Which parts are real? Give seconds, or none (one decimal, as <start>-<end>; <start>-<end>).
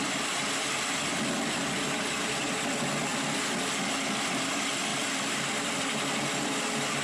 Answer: 0.0-4.9; 5.5-7.0